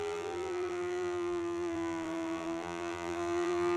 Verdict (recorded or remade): remade